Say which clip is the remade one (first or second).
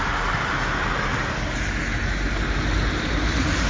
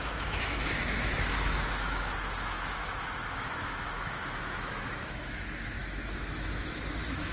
second